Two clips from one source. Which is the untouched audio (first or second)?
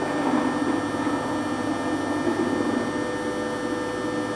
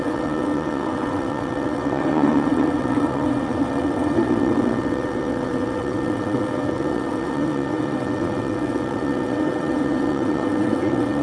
first